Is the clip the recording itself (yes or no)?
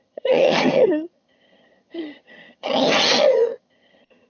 no